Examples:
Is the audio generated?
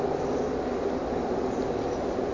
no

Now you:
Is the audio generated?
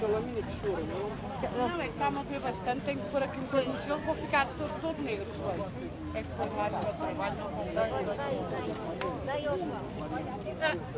no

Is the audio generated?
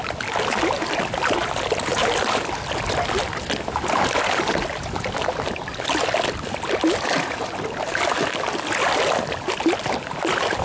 no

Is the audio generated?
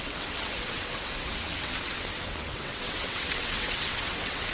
yes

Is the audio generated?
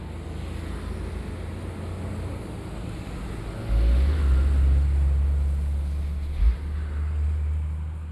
no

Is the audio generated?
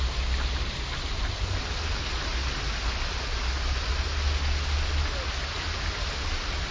no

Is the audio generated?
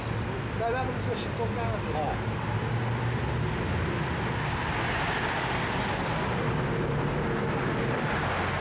no